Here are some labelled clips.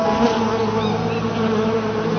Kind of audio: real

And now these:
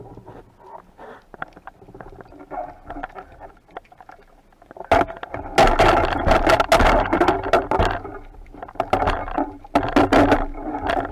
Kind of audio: real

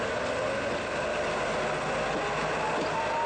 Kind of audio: real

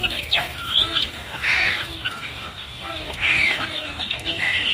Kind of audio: fake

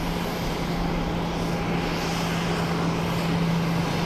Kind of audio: real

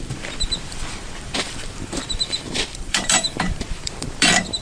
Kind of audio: fake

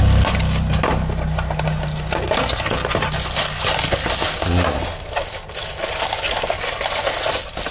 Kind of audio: real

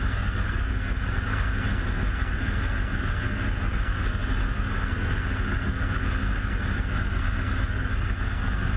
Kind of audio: fake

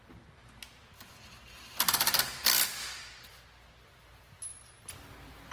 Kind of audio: real